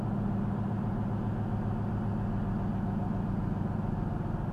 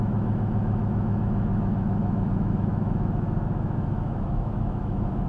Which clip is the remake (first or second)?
second